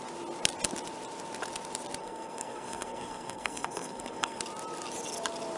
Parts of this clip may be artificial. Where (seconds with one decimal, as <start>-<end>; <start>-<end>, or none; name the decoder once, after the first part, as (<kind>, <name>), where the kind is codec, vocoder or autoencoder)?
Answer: 2.0-4.4 (codec, SNAC)